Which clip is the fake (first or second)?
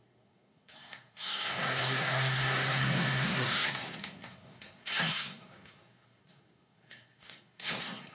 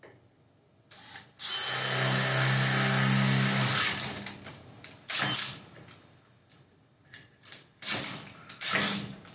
first